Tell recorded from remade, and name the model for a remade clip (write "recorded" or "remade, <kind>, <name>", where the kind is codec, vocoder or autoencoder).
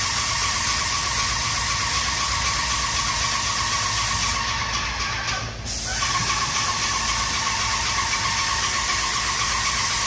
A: recorded